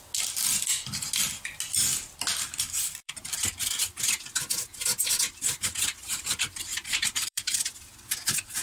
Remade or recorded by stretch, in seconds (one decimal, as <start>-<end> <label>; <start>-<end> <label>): 0.0-2.3 recorded; 2.3-3.8 remade; 3.8-6.0 recorded; 6.0-7.6 remade; 7.6-8.6 recorded